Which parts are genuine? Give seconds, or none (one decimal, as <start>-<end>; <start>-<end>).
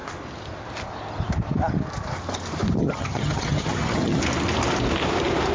0.0-2.8; 4.2-5.5